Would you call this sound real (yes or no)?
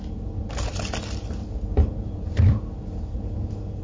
yes